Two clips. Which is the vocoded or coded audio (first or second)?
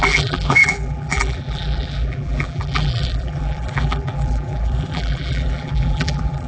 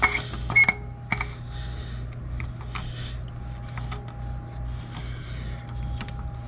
first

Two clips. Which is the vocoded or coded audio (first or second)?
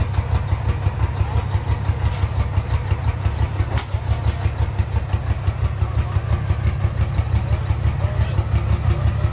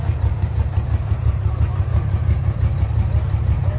second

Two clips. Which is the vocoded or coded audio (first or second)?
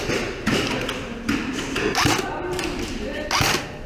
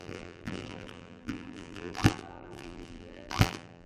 second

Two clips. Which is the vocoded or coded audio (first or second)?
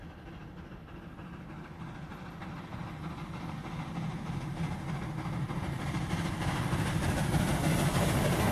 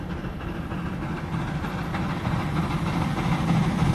second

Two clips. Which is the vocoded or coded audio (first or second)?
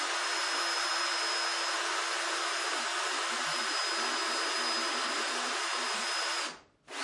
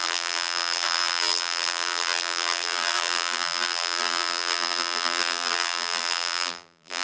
second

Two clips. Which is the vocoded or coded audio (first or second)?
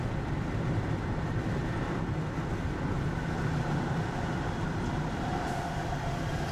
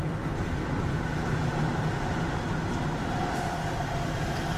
first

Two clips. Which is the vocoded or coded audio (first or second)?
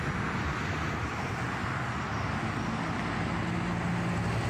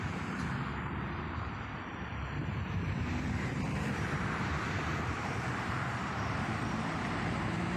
second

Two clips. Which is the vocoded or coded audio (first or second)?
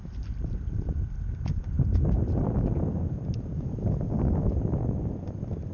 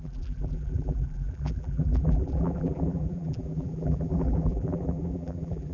second